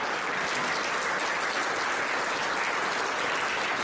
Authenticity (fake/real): real